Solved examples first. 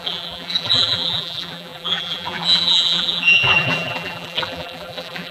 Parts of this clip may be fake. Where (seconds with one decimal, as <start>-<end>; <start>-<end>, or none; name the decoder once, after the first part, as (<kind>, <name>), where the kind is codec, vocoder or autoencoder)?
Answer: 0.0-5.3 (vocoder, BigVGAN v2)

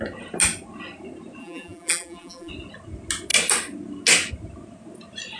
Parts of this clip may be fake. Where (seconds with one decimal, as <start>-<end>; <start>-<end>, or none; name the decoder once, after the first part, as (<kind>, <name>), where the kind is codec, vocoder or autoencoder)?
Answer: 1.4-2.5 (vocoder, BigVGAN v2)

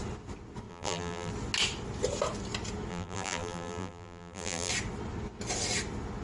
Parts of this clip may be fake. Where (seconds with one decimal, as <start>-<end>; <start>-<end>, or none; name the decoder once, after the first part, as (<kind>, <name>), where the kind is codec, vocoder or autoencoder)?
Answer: 0.7-1.3 (vocoder, BigVGAN v2); 2.9-4.7

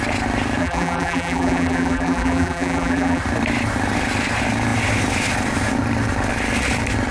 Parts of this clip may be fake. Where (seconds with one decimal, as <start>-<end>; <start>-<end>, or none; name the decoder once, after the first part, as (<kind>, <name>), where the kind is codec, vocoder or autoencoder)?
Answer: 0.6-3.2 (vocoder, BigVGAN v2)

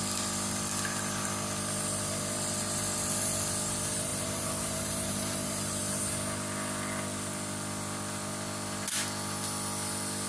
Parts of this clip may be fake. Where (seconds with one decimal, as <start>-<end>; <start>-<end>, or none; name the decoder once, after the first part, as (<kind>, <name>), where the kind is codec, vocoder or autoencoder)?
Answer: 4.1-5.8 (vocoder, BigVGAN v2)